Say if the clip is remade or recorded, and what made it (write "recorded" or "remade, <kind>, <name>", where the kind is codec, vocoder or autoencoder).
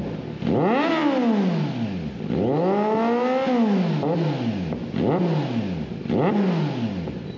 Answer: recorded